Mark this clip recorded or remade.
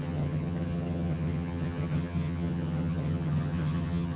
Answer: remade